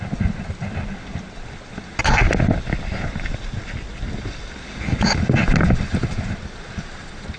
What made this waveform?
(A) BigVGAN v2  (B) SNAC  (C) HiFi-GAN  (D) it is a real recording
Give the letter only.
D